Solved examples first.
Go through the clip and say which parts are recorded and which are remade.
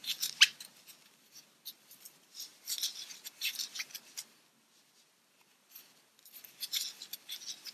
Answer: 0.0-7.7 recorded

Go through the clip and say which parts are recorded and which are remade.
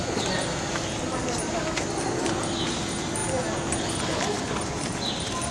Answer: 0.0-1.6 recorded; 1.6-3.2 remade; 3.2-4.0 recorded; 4.0-5.5 remade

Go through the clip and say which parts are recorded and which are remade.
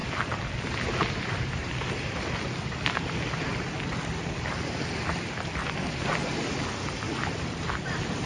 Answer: 0.0-3.5 recorded; 3.5-6.1 remade; 6.1-8.3 recorded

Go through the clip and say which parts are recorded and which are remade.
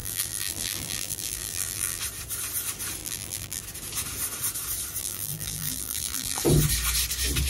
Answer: 0.0-2.0 remade; 2.0-3.0 recorded; 3.0-3.6 remade; 3.6-5.0 recorded; 5.0-6.4 remade; 6.4-7.5 recorded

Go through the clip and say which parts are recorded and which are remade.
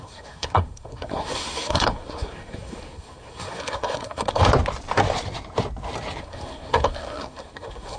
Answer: 0.0-4.4 remade; 4.4-6.2 recorded; 6.2-8.0 remade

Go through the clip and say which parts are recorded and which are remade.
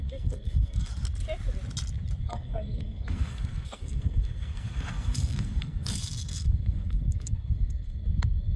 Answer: 0.0-0.9 remade; 0.9-2.2 recorded; 2.2-8.6 remade